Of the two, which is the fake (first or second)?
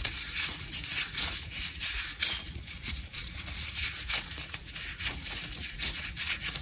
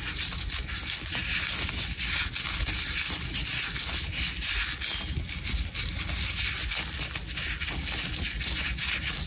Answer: first